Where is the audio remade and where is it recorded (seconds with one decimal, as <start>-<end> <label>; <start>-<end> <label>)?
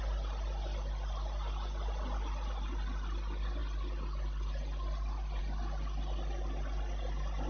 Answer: 0.0-7.5 recorded